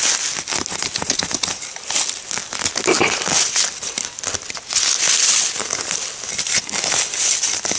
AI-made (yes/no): no